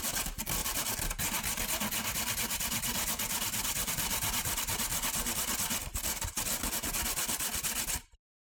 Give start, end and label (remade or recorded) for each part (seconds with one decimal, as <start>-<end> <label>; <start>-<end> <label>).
0.0-8.6 recorded